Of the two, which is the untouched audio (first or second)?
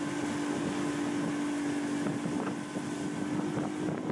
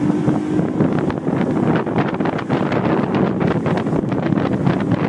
first